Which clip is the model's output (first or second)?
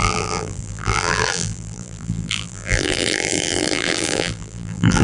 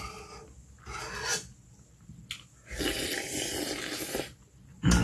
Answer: first